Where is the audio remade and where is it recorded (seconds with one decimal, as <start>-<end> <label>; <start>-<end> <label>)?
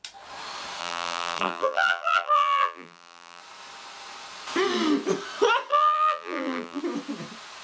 0.0-0.8 recorded; 0.8-3.4 remade; 3.4-5.7 recorded; 5.7-6.8 remade; 6.8-7.6 recorded